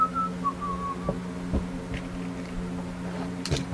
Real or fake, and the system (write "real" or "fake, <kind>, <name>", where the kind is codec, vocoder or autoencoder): real